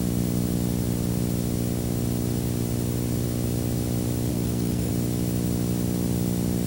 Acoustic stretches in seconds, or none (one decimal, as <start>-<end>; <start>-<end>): 0.0-4.3; 4.9-6.7

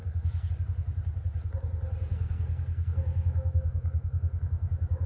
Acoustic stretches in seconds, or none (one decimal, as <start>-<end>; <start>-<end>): 0.5-2.1

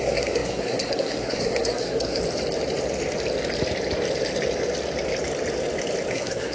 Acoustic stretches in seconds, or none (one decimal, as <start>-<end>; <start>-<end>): 2.2-6.1

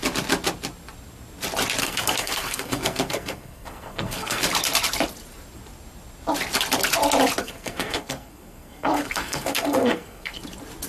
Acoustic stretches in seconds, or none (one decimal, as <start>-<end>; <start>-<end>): 0.0-1.8; 4.4-7.4; 10.4-10.9

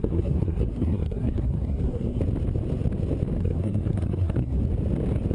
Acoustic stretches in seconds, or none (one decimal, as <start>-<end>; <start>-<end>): 2.2-3.4; 4.6-5.3

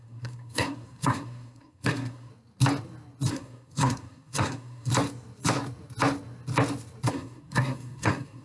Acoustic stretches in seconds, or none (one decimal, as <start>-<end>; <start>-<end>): 2.3-3.3; 4.9-7.1